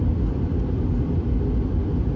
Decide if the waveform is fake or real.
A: fake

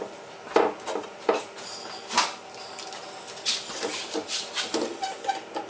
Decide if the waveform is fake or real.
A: real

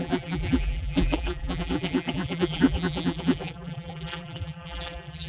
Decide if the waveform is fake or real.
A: fake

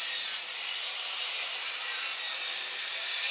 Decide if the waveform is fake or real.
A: fake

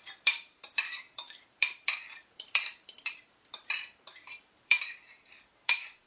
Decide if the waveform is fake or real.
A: fake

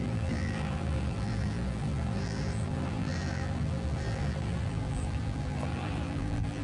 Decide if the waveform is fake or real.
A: fake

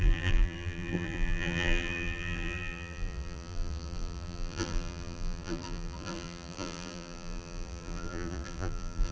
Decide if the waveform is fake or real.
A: fake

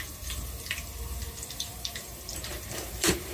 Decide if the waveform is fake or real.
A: fake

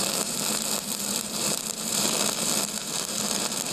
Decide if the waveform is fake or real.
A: fake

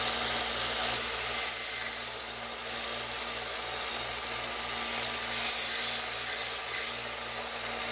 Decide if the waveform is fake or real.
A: real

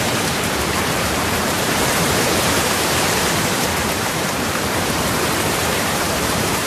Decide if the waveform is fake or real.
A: fake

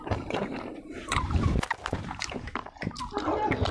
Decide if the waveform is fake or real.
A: fake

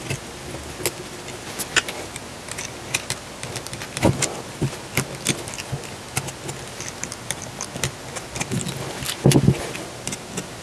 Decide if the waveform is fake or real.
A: real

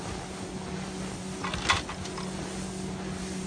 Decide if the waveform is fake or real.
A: real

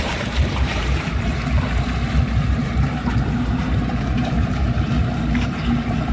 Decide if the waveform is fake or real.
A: fake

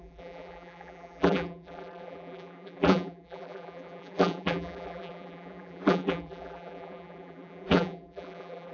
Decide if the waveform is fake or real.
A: fake